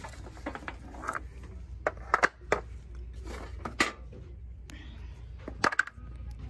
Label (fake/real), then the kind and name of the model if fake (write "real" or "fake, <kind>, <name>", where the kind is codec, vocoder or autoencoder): real